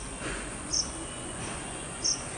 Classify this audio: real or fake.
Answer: fake